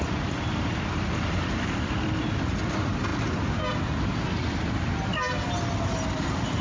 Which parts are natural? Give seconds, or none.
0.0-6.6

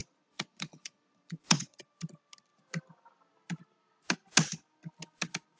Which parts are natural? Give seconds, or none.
1.8-5.6

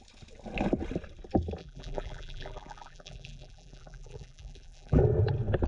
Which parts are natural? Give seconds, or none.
0.0-1.6; 5.0-5.7

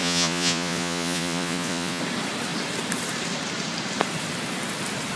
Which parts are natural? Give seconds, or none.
2.0-5.2

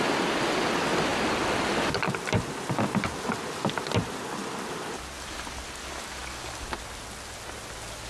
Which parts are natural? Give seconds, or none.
0.0-8.1

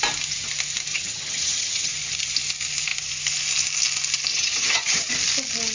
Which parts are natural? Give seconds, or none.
0.0-0.9; 1.9-4.3; 5.1-5.7

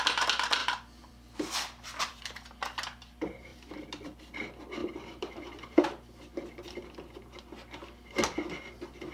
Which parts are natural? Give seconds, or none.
0.0-0.6; 2.2-3.5; 4.2-4.8; 5.8-9.1